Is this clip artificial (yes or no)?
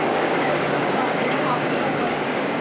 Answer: yes